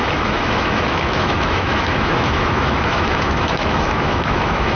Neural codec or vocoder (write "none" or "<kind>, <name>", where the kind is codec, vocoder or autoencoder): autoencoder, DAC-VAE